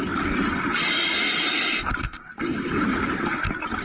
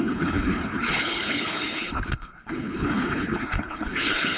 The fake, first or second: second